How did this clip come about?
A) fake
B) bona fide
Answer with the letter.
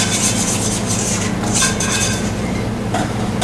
A